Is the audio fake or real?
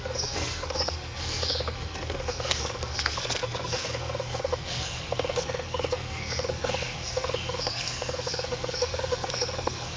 fake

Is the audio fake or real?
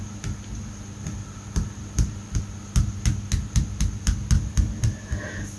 real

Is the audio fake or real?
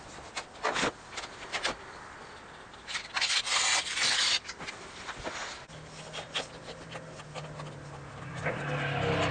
real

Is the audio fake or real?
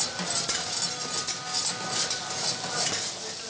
real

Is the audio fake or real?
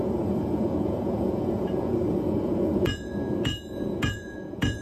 fake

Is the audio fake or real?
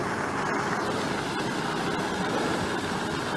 real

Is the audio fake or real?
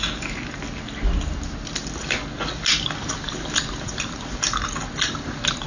real